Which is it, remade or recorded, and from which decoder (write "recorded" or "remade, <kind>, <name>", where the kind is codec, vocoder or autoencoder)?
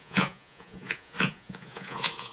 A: remade, vocoder, Vocos